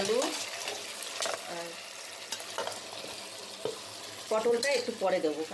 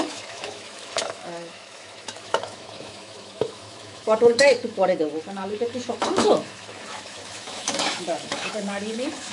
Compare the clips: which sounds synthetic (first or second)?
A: second